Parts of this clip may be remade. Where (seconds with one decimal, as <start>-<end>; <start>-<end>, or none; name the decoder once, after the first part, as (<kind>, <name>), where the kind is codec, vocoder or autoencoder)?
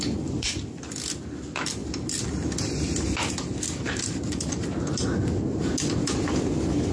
none